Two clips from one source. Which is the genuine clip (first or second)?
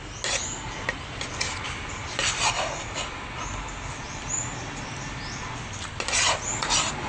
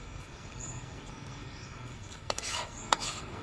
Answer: first